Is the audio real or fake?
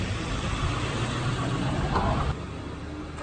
real